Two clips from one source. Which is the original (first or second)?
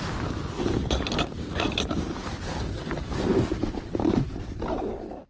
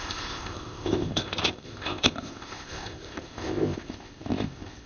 first